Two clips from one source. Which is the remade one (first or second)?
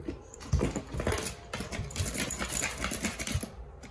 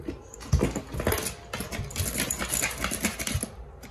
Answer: first